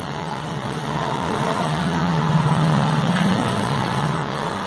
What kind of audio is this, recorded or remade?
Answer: remade